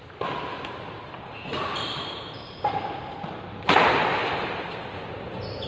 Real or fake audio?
real